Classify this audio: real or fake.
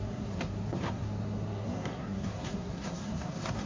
fake